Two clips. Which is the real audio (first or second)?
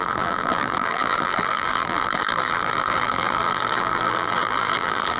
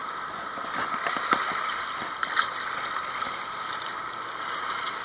second